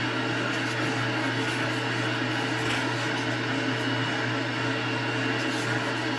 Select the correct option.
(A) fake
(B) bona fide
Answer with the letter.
B